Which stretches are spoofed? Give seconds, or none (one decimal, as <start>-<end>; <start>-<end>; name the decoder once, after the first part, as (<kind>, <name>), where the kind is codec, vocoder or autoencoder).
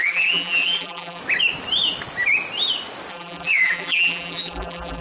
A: 0.0-1.2 (vocoder, BigVGAN v2); 3.1-5.0